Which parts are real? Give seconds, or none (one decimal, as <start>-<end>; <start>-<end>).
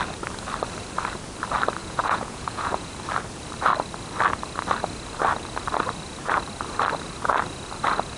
0.0-1.8; 2.9-8.2